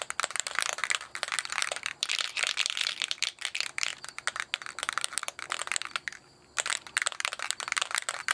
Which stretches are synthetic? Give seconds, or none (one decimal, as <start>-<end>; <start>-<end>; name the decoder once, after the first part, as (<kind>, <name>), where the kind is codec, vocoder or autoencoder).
0.0-0.8 (vocoder, BigVGAN v2); 1.5-3.9; 4.8-5.6; 6.7-8.3